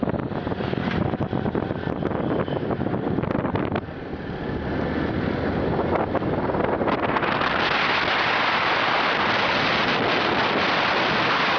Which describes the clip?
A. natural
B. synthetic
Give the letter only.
A